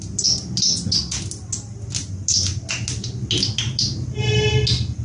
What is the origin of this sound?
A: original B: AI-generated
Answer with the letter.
A